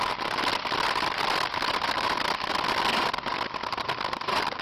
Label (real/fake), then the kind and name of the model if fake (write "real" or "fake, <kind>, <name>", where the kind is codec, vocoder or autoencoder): real